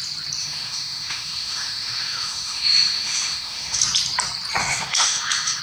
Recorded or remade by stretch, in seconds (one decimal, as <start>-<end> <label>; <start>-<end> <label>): 0.0-0.4 recorded; 0.4-3.8 remade; 3.8-4.6 recorded; 4.6-5.6 remade